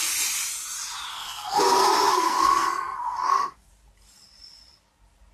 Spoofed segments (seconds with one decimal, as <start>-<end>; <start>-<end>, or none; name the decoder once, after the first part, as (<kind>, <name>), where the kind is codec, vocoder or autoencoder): 1.1-3.7 (codec, SNAC)